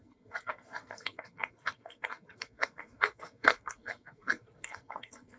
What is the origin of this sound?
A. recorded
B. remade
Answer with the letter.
B